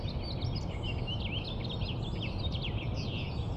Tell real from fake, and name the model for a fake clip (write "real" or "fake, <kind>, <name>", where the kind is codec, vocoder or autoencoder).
real